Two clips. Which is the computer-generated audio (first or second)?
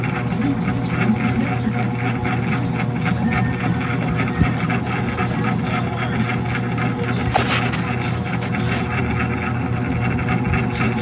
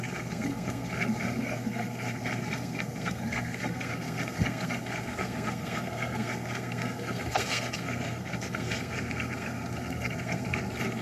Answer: second